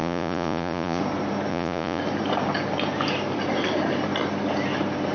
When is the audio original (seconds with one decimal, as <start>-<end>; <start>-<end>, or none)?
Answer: 1.0-1.5; 2.0-5.1